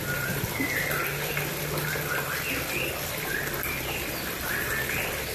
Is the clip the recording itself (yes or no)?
yes